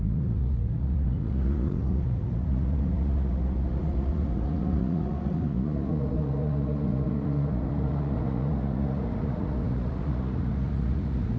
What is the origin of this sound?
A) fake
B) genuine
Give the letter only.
A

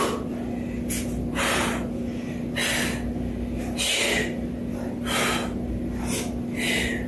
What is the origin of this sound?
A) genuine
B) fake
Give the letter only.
A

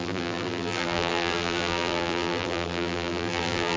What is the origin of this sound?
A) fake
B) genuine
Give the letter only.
A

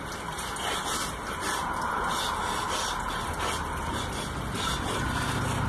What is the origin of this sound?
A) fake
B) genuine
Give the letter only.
B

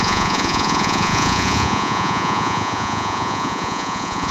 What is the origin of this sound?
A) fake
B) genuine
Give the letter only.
A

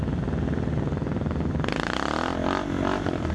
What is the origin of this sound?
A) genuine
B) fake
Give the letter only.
A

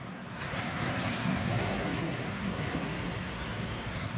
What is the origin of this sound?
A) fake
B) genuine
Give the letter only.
A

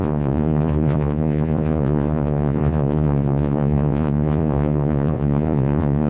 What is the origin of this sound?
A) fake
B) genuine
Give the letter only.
A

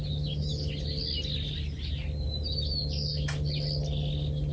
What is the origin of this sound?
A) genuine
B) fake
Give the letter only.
A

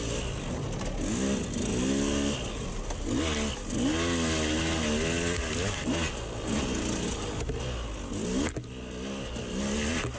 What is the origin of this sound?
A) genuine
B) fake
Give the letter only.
A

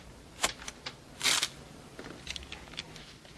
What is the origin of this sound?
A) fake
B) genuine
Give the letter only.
B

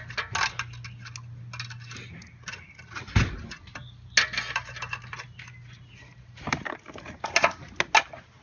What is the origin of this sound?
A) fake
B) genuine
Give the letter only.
B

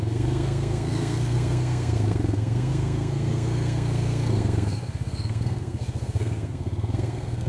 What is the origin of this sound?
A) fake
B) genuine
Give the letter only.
A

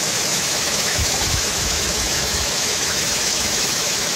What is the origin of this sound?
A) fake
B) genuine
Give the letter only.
A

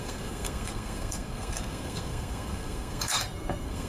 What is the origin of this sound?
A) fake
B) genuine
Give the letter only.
A